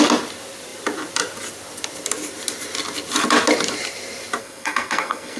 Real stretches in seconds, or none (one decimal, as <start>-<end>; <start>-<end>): 0.0-4.4